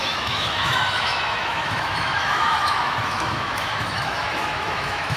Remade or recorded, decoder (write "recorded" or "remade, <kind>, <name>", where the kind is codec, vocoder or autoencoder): remade, autoencoder, DAC-VAE